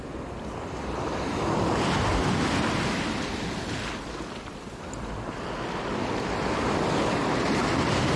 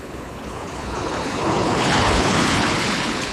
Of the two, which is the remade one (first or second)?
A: second